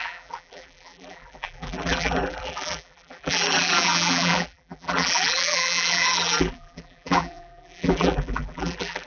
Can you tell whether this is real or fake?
fake